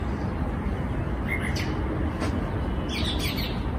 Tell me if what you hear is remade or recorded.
recorded